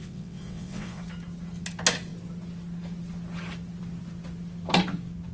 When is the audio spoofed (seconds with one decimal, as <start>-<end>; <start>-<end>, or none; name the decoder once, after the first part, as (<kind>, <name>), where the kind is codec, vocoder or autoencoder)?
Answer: 0.0-1.0 (vocoder, WaveNeXt)